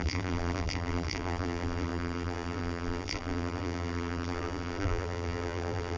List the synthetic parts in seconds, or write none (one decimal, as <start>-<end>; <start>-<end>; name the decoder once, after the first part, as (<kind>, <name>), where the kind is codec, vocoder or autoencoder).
0.0-6.0 (vocoder, BigVGAN v2)